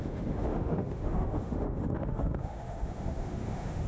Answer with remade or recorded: remade